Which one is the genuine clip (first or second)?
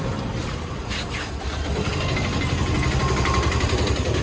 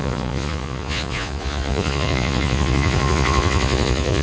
first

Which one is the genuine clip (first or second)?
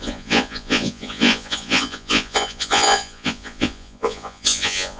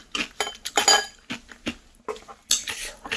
second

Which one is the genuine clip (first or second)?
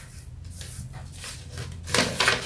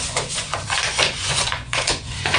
first